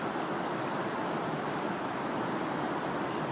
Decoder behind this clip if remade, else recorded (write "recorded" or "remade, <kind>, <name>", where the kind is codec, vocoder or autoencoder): recorded